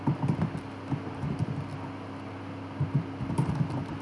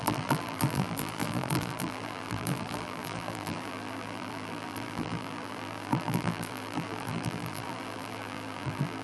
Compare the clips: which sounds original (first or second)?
first